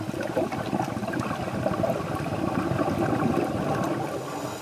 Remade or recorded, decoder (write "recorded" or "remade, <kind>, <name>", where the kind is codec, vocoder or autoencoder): recorded